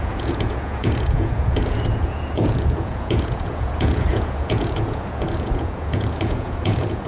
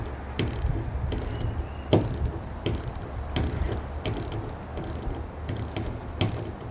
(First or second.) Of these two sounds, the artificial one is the first